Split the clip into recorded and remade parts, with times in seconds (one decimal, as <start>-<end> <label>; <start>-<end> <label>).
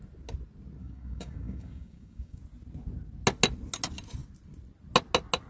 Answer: 0.0-0.8 recorded; 0.8-2.4 remade; 2.4-5.5 recorded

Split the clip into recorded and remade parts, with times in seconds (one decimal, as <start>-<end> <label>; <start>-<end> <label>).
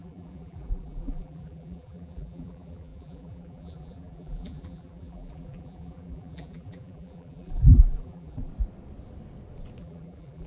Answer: 0.0-8.5 remade; 8.5-9.8 recorded; 9.8-10.5 remade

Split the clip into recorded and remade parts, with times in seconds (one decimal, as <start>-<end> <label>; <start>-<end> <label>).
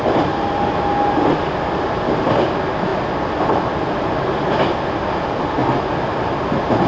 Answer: 0.0-6.9 recorded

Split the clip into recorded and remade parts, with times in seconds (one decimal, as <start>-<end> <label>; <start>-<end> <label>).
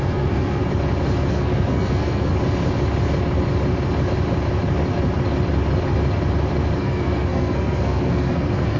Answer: 0.0-0.6 remade; 0.6-1.3 recorded; 1.3-2.3 remade; 2.3-6.8 recorded; 6.8-8.8 remade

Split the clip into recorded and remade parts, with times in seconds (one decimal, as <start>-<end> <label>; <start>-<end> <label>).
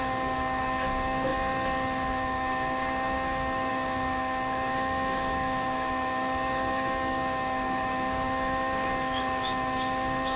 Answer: 0.0-10.4 remade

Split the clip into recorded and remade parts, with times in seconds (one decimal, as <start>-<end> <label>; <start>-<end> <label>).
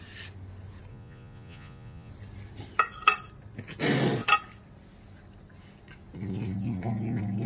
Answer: 0.0-0.9 recorded; 0.9-2.1 remade; 2.1-7.5 recorded